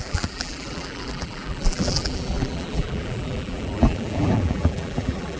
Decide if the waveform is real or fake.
fake